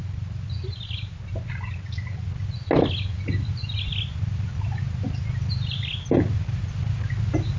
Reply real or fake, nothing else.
real